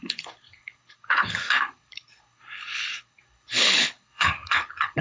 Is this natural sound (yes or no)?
no